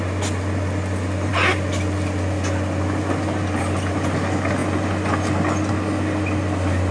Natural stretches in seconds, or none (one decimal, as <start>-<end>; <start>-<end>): 0.0-6.9